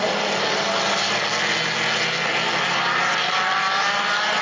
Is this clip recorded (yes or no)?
yes